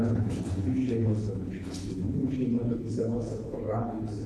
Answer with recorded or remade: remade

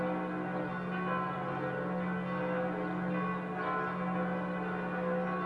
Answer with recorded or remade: recorded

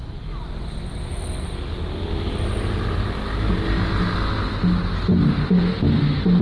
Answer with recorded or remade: recorded